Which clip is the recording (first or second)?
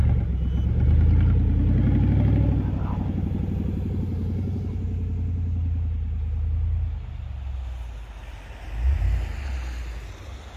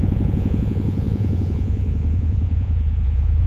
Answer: first